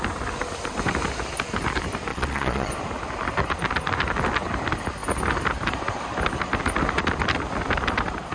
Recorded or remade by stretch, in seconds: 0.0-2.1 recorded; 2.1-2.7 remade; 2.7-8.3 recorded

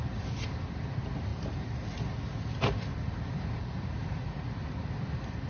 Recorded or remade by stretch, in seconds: 0.0-1.3 recorded; 1.3-2.0 remade; 2.0-2.9 recorded; 2.9-4.7 remade; 4.7-5.5 recorded